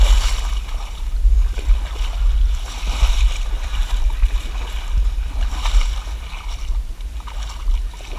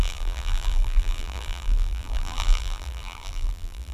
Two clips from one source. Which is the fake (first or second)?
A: second